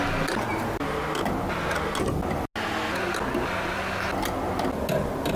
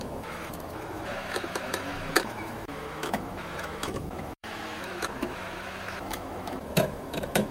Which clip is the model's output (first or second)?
second